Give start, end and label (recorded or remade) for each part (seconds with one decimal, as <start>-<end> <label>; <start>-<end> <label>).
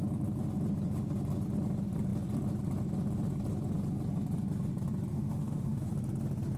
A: 0.0-5.1 recorded; 5.1-5.9 remade; 5.9-6.6 recorded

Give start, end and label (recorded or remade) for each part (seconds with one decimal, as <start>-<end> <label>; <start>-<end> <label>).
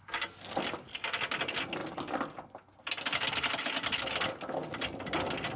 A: 0.0-5.6 recorded